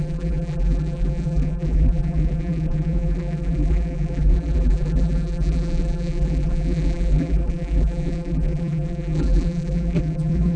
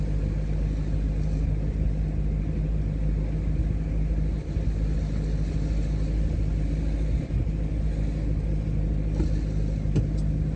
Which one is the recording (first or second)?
second